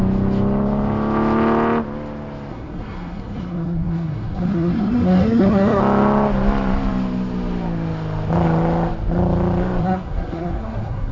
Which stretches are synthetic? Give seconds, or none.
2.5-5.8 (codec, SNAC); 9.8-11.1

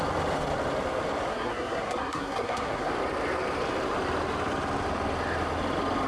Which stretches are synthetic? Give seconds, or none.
1.3-2.9 (codec, SNAC)

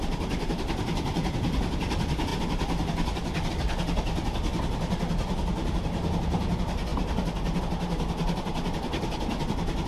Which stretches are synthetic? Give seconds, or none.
none

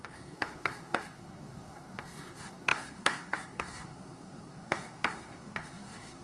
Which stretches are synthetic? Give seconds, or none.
0.0-6.2 (codec, SNAC)

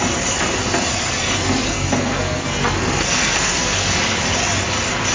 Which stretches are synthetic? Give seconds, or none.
0.9-4.0 (codec, SNAC)

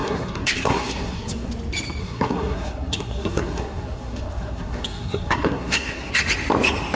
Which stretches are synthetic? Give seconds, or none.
0.0-1.5 (codec, SNAC); 2.0-6.1

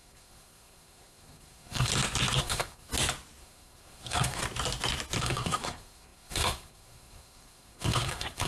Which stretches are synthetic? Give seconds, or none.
0.0-1.9 (codec, SNAC); 2.4-2.9; 3.4-4.4; 5.2-8.5

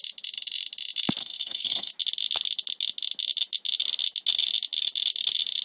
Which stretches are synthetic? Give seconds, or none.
1.2-1.9 (codec, SNAC)